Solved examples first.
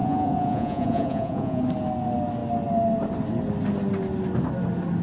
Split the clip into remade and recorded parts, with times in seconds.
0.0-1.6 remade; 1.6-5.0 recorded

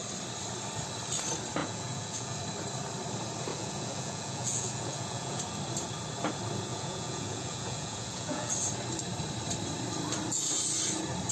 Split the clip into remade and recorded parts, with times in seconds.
0.0-1.6 recorded; 1.6-2.4 remade; 2.4-3.5 recorded; 3.5-5.4 remade; 5.4-6.7 recorded; 6.7-8.5 remade; 8.5-11.3 recorded